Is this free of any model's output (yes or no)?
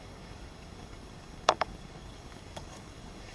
no